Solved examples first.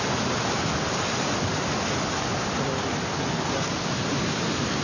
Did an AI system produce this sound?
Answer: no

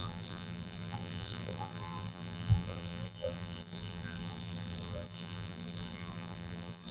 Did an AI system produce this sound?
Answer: yes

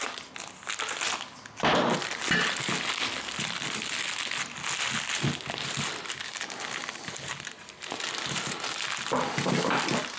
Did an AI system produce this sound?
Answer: no